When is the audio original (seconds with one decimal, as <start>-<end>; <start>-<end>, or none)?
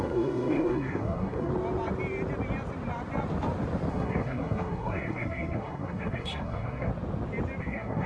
1.5-3.9; 6.9-7.6